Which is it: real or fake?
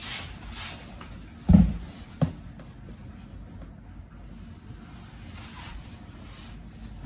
real